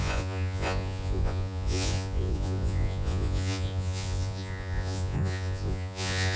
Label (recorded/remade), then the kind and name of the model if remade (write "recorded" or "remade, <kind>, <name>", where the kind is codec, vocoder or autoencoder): remade, vocoder, Vocos